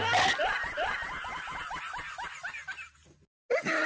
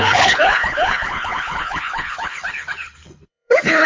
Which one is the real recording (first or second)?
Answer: first